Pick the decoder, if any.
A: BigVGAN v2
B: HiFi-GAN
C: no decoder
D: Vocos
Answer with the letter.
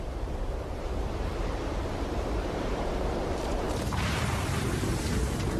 A